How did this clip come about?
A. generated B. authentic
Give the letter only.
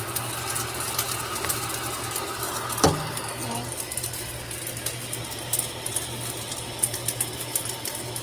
B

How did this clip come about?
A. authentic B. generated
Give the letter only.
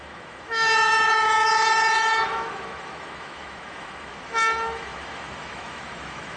B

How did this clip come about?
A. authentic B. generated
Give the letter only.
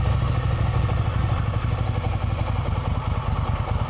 A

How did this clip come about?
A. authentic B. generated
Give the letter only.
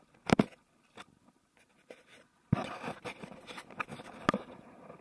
A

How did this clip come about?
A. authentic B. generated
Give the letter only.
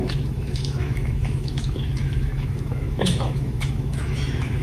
B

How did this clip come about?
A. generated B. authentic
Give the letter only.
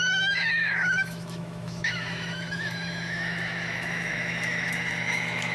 A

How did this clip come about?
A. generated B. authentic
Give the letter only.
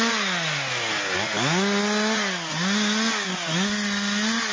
B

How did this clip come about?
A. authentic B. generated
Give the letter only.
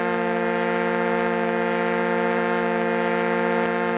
A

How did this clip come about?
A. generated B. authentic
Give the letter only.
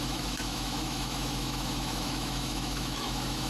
A